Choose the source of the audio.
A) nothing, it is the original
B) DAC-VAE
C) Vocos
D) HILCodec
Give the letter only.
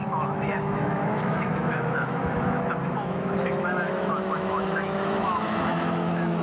B